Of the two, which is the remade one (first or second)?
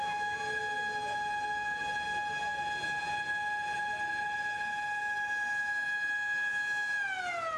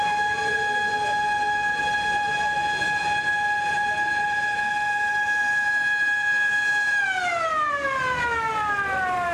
second